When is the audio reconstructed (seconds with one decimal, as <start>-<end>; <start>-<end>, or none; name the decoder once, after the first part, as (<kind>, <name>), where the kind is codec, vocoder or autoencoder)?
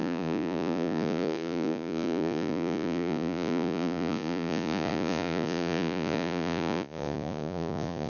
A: 0.0-8.1 (vocoder, Vocos)